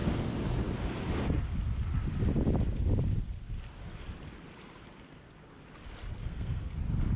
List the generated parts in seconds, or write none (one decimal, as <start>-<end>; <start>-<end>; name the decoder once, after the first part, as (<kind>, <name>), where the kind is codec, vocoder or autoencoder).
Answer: 6.2-6.8 (codec, SNAC)